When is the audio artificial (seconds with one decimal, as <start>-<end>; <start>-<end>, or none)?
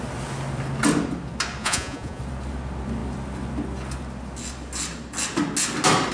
1.6-2.2